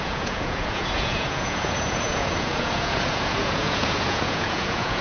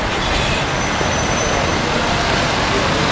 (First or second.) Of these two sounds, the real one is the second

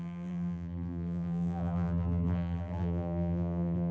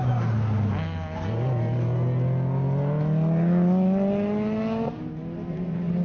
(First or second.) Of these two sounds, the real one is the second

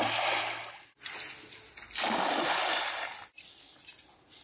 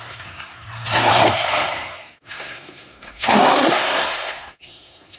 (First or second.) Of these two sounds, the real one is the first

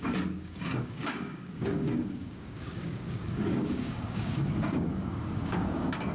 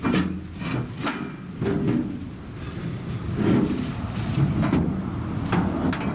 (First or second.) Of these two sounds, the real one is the second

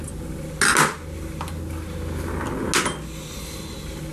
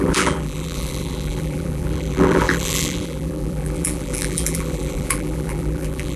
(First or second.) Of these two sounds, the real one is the first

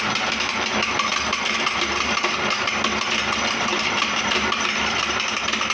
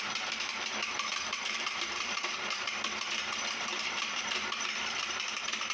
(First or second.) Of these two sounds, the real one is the first